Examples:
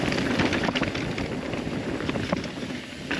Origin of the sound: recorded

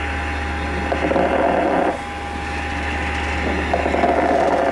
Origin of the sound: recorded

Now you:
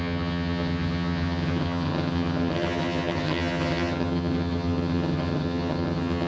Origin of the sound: remade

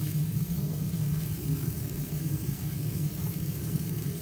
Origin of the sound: remade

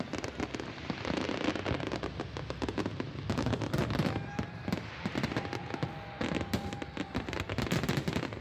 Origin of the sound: recorded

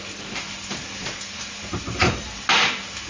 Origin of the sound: recorded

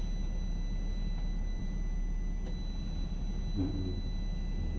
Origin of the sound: recorded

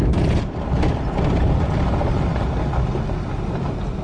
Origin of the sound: recorded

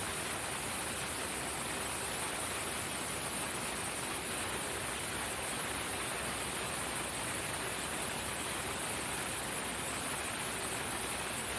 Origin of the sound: recorded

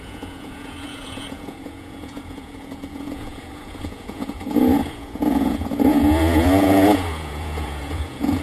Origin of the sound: remade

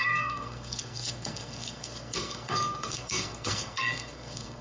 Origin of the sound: remade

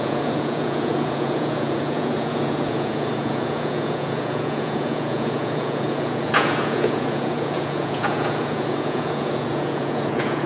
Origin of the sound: remade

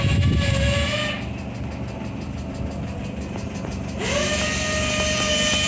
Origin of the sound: recorded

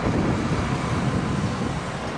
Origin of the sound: recorded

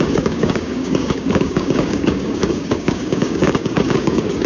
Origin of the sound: remade